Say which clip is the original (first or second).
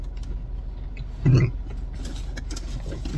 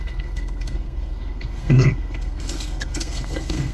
first